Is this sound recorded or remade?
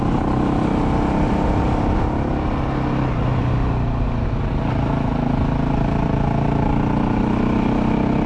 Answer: recorded